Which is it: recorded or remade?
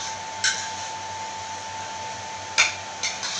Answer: recorded